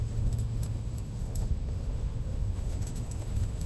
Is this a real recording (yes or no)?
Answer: no